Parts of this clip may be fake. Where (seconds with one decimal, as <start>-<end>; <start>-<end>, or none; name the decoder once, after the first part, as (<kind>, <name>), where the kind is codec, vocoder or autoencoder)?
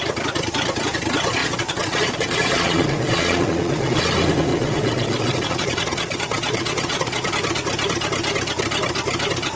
1.4-4.0 (vocoder, Vocos); 4.5-7.3